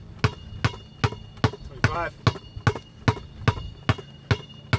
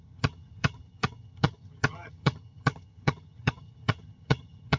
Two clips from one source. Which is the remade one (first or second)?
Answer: second